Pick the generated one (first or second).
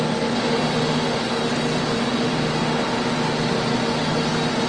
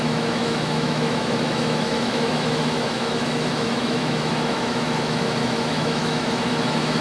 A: second